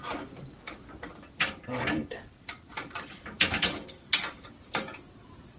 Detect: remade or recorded recorded